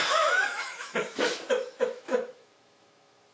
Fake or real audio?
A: fake